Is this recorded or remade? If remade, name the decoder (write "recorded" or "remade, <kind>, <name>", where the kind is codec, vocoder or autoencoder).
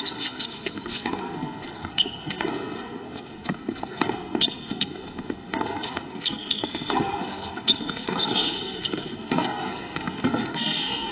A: remade, codec, SNAC